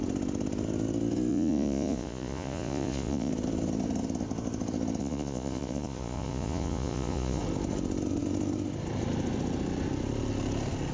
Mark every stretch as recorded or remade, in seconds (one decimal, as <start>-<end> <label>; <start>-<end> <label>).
0.0-1.3 recorded; 1.3-3.3 remade; 3.3-5.0 recorded; 5.0-7.4 remade; 7.4-10.9 recorded